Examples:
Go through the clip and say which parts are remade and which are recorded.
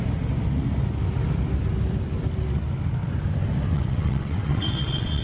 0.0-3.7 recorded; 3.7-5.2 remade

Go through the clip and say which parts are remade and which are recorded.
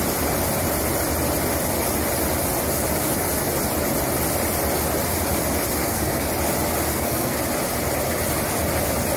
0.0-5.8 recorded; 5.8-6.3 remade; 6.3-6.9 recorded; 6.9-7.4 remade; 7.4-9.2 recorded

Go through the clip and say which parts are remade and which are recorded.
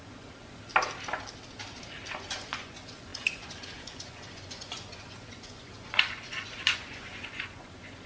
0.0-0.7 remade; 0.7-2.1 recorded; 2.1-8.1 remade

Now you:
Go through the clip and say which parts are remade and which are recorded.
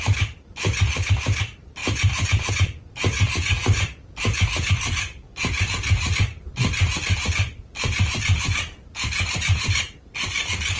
0.0-10.8 recorded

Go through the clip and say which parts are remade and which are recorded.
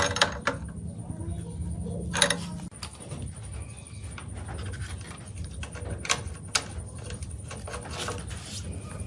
0.0-9.1 recorded